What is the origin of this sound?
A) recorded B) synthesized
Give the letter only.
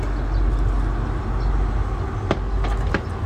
A